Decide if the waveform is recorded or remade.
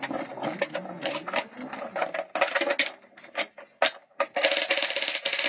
recorded